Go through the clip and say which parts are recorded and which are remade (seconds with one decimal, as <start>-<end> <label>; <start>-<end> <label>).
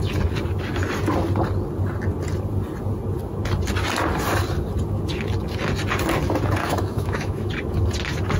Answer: 0.0-6.6 recorded; 6.6-7.5 remade; 7.5-8.4 recorded